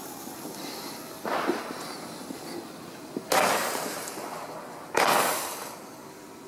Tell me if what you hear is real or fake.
real